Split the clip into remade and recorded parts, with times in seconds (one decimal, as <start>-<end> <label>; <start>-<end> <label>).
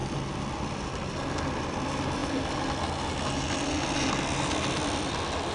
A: 0.0-5.5 recorded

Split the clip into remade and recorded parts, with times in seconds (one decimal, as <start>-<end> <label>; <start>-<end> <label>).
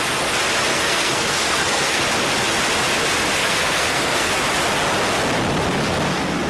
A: 0.0-0.7 recorded; 0.7-2.0 remade; 2.0-3.4 recorded; 3.4-4.3 remade; 4.3-6.5 recorded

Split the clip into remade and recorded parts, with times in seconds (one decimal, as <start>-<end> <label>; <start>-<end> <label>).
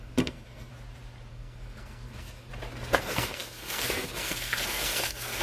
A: 0.0-0.7 remade; 0.7-1.3 recorded; 1.3-2.5 remade; 2.5-3.0 recorded; 3.0-5.4 remade